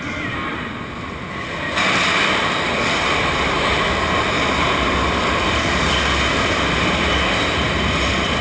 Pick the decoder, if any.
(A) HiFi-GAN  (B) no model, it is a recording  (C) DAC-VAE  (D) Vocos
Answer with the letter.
B